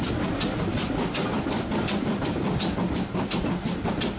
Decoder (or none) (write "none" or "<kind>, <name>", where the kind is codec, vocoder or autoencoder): none